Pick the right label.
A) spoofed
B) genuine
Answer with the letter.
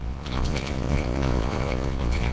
A